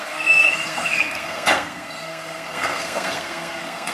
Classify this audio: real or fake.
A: fake